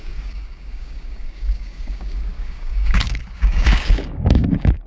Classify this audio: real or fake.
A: fake